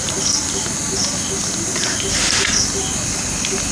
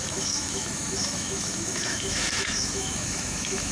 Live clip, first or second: first